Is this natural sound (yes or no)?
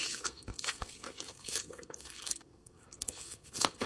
no